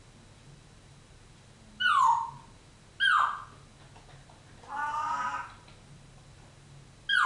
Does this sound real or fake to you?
real